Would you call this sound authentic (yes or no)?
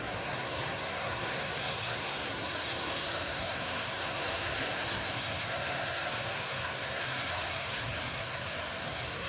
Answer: no